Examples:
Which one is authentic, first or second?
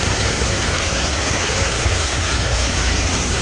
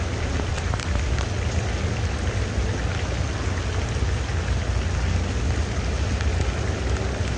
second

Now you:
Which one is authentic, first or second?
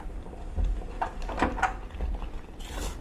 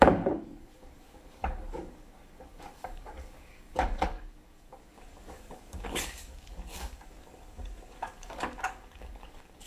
first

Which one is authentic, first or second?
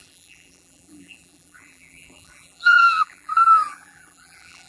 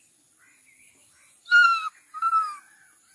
second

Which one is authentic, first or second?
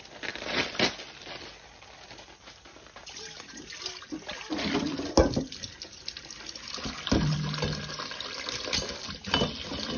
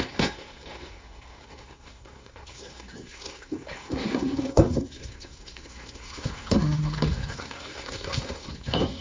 first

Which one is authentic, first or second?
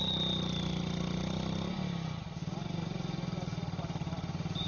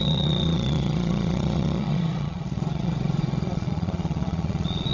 first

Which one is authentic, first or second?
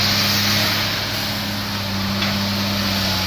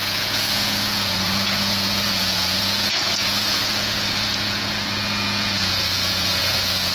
first